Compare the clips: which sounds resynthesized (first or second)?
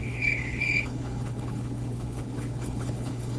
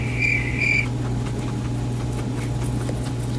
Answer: first